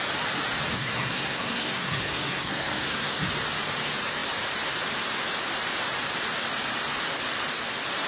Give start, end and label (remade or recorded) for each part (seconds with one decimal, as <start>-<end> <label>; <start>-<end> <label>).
0.0-0.7 recorded; 0.7-3.2 remade; 3.2-8.1 recorded